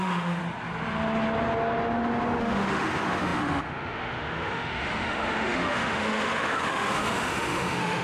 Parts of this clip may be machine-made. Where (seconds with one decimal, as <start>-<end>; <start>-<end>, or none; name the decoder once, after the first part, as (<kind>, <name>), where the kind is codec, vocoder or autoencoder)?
0.0-0.4 (autoencoder, DAC-VAE); 2.4-8.0